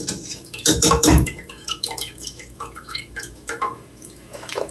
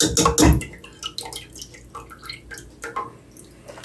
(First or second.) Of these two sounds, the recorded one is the second